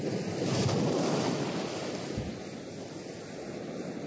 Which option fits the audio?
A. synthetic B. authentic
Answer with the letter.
B